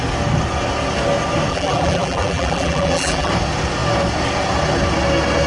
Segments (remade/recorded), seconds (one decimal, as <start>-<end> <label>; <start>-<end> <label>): 0.0-1.5 recorded; 1.5-3.3 remade; 3.3-5.5 recorded